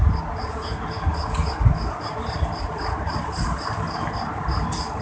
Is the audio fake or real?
real